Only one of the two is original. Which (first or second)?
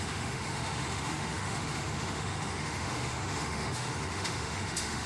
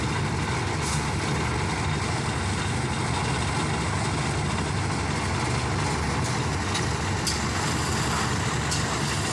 second